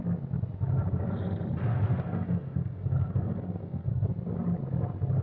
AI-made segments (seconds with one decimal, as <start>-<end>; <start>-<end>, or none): 1.7-4.1